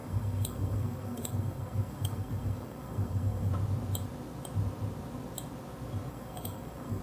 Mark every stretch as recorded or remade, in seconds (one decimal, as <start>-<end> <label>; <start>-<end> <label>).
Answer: 0.0-3.5 remade; 3.5-6.1 recorded; 6.1-7.0 remade